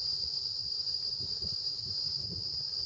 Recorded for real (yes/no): yes